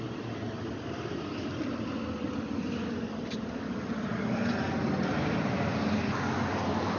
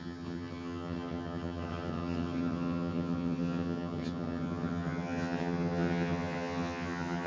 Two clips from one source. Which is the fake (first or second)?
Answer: second